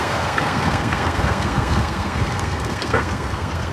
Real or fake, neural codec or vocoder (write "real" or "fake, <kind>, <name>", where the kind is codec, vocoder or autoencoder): fake, codec, SNAC